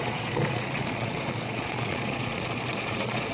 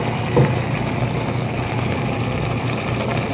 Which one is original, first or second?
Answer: second